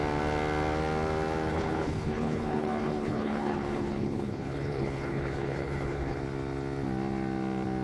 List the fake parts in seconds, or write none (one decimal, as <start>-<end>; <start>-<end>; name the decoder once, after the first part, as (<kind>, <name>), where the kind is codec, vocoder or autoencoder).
1.5-6.2 (codec, HILCodec)